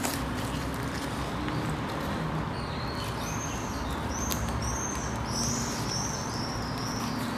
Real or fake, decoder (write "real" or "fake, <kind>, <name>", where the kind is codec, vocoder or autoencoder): real